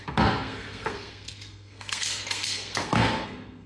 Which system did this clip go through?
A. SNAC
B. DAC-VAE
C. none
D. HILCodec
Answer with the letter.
A